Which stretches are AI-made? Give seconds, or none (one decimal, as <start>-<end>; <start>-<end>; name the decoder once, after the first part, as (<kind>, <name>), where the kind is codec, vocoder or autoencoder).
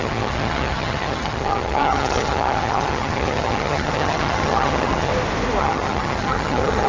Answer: 0.0-5.1 (vocoder, HiFi-GAN); 5.6-6.9